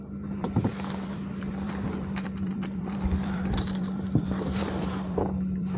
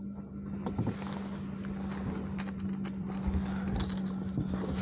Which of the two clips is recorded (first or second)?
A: second